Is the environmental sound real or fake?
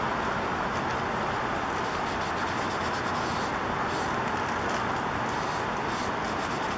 real